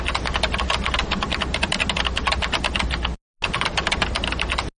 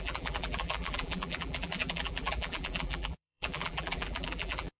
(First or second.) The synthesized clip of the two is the second